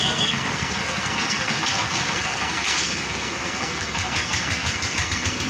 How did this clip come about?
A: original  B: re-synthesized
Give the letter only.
B